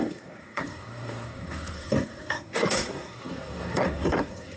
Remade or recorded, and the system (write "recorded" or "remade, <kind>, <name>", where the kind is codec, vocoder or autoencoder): remade, codec, SNAC